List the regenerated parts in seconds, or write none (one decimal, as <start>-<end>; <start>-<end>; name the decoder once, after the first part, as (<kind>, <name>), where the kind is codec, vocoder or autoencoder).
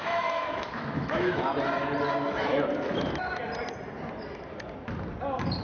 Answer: 0.0-1.5 (autoencoder, DAC-VAE); 2.1-2.5